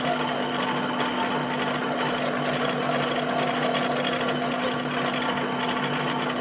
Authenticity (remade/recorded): recorded